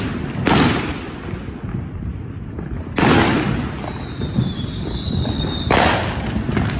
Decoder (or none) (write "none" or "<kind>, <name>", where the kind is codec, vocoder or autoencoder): none